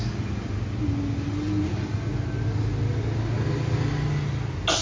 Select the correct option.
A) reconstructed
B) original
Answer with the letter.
B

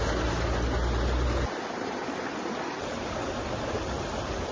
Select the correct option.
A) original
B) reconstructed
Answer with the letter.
A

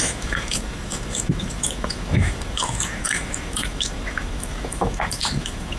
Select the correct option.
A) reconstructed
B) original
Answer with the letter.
A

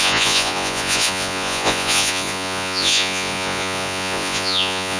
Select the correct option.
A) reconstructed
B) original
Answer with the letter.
A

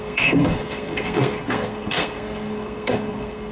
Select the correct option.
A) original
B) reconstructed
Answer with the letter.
B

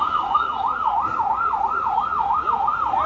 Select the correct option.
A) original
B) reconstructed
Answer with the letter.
B